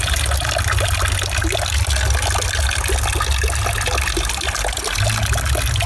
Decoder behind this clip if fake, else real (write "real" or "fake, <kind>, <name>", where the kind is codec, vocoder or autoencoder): real